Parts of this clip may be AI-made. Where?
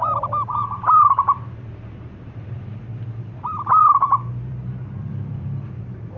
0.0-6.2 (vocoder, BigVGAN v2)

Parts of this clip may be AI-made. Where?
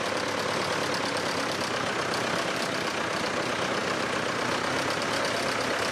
none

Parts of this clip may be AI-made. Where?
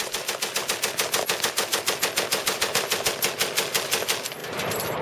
4.4-5.0 (vocoder, BigVGAN v2)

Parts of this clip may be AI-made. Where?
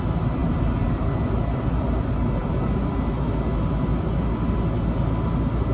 none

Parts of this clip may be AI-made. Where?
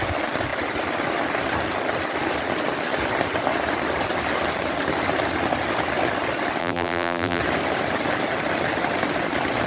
6.6-7.4 (vocoder, BigVGAN v2)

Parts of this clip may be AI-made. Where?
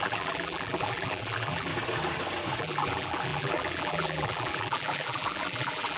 0.0-1.7 (vocoder, BigVGAN v2); 2.6-6.0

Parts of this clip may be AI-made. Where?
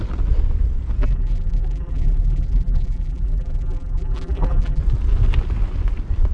1.0-4.8 (vocoder, BigVGAN v2)